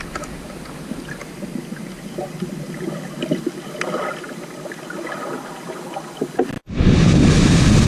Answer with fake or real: real